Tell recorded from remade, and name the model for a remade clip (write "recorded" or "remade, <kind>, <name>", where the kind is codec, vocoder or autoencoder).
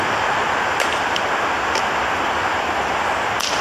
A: recorded